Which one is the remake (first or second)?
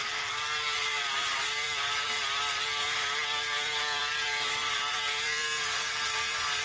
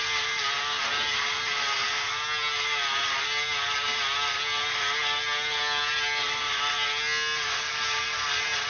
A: first